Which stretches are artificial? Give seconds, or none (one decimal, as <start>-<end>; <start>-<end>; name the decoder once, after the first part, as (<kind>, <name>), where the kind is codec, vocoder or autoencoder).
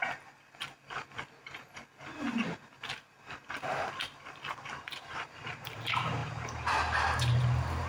4.7-7.9 (vocoder, BigVGAN v2)